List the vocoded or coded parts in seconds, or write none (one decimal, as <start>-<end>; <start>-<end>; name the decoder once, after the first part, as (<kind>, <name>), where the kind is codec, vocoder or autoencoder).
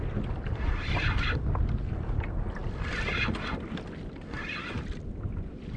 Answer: none